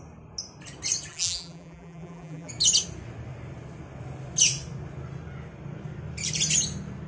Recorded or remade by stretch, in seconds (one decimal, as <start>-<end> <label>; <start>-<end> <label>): 0.0-1.1 recorded; 1.1-2.5 remade; 2.5-7.1 recorded